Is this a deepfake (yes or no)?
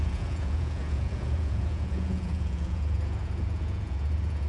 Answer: yes